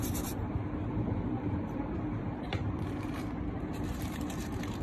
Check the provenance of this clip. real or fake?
fake